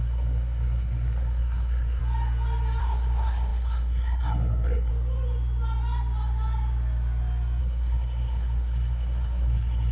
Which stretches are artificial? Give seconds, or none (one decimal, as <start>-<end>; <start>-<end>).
0.0-2.0; 2.8-4.9; 7.6-9.9